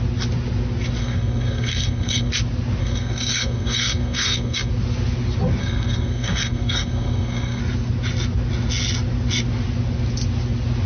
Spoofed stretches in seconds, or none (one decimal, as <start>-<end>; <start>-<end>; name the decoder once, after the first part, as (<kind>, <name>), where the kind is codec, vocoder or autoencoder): 1.0-2.3 (codec, SNAC); 2.8-4.7; 5.6-7.6